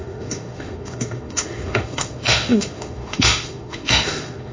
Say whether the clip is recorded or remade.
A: remade